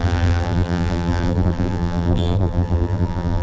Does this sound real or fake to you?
fake